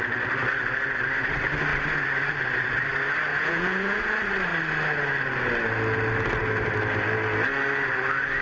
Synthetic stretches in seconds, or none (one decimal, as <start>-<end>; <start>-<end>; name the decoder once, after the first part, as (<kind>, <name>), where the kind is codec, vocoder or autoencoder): 3.3-4.0 (vocoder, Vocos)